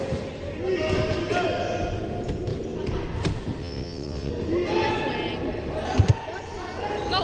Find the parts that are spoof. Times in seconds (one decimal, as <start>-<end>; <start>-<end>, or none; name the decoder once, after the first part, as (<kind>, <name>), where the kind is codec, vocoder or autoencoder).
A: 3.6-4.3 (vocoder, WaveNeXt)